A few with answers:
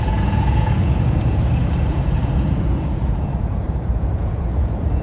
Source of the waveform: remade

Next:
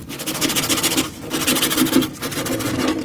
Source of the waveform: recorded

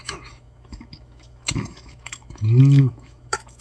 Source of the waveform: remade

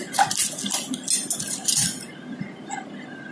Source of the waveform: recorded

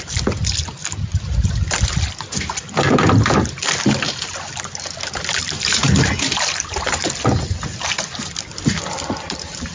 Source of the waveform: recorded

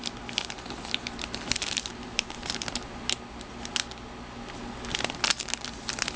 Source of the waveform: recorded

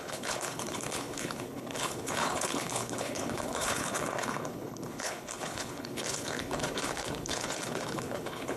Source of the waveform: remade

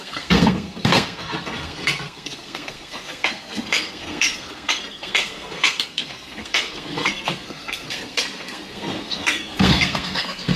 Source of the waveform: remade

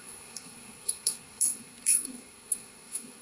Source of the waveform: remade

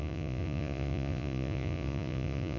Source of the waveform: remade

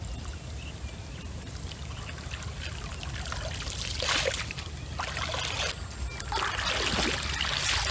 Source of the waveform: recorded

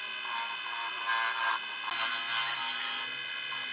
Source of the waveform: recorded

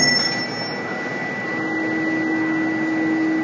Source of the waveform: recorded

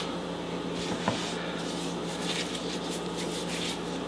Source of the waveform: recorded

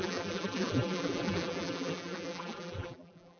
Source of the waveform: remade